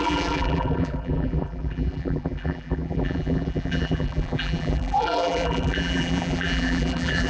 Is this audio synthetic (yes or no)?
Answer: yes